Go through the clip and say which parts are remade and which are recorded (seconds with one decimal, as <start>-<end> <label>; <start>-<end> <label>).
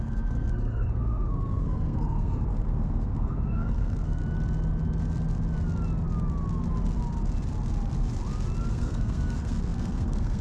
0.0-4.2 remade; 4.2-8.7 recorded; 8.7-10.4 remade